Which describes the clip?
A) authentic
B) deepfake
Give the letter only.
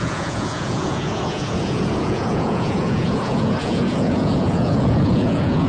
B